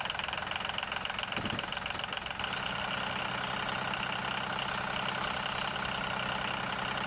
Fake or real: real